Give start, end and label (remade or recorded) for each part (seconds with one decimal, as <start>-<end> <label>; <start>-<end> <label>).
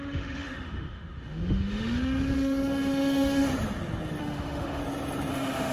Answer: 0.0-3.5 remade; 3.5-4.2 recorded; 4.2-4.8 remade; 4.8-5.3 recorded; 5.3-5.7 remade